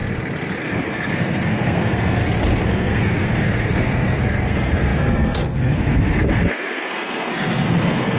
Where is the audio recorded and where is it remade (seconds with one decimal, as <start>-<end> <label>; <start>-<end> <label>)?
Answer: 0.0-0.6 recorded; 0.6-2.2 remade; 2.2-2.7 recorded; 2.7-8.2 remade